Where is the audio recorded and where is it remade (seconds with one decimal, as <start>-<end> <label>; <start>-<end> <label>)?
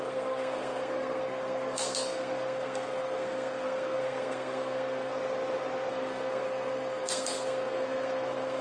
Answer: 0.0-5.1 remade; 5.1-5.9 recorded; 5.9-8.6 remade